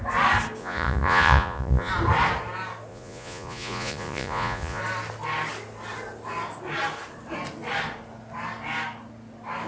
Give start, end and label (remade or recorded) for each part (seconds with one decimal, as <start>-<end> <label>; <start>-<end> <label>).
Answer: 0.0-0.6 recorded; 0.6-1.9 remade; 1.9-2.9 recorded; 2.9-4.8 remade; 4.8-9.7 recorded